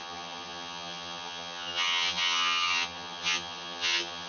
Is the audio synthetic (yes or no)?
yes